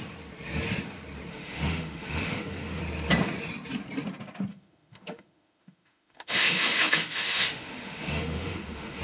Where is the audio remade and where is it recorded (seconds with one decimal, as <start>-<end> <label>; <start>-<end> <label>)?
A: 0.0-1.3 recorded; 1.3-2.8 remade; 2.8-4.5 recorded; 4.5-9.0 remade